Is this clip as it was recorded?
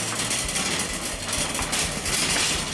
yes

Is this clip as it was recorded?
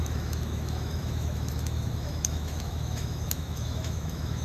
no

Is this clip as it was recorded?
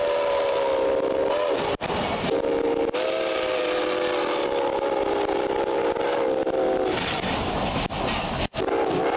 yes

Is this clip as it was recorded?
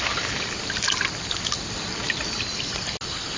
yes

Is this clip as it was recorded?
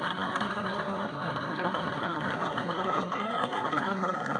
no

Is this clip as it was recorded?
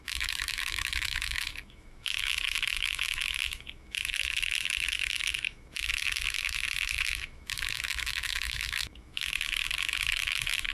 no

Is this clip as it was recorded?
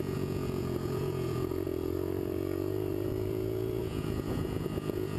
no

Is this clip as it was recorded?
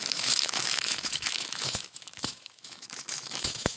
no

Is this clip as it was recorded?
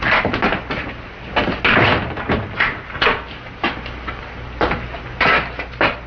yes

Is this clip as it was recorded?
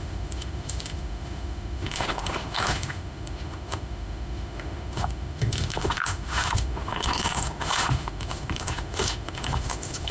no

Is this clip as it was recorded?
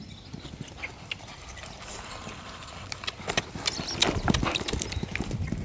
yes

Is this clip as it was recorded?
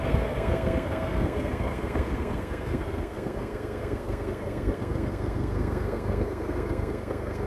no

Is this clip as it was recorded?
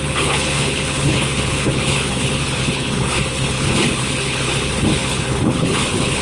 no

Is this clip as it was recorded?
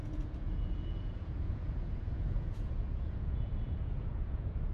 no